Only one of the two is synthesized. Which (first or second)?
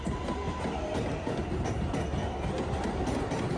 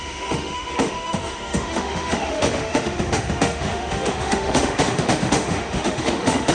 second